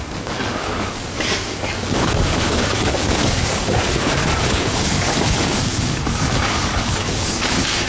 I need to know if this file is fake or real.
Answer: fake